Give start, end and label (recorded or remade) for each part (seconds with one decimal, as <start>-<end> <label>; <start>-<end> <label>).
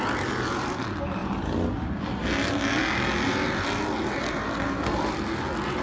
0.0-5.8 recorded